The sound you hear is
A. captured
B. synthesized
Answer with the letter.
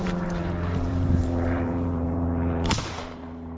B